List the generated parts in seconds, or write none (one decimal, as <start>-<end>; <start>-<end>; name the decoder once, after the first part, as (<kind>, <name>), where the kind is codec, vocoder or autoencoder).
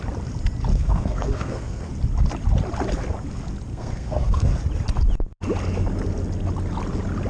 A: 0.7-1.9 (codec, SNAC); 3.7-4.6